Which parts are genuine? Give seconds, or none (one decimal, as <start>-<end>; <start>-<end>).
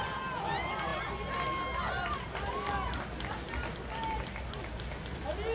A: 0.0-5.5